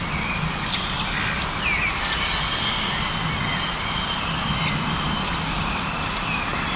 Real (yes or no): yes